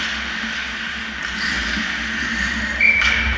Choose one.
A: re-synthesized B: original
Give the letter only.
B